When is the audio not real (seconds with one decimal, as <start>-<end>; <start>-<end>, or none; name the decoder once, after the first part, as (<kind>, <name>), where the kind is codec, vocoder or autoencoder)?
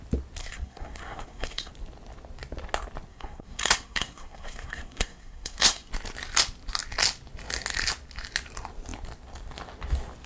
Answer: 0.4-1.7 (codec, SNAC); 3.1-5.9